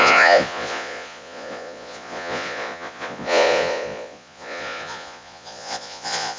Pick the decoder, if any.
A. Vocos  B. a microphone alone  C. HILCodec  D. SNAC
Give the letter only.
A